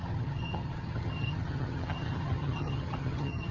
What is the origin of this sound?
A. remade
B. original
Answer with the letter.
A